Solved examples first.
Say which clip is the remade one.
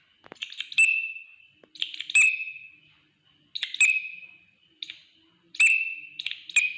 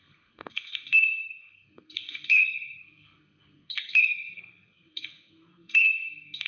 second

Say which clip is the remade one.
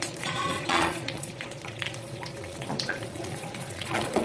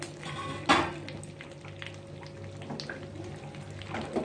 first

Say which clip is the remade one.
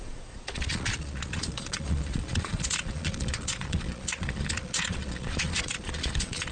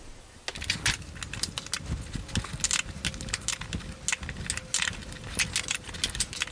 first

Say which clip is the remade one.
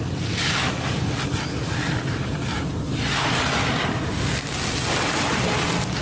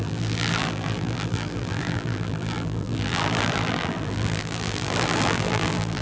second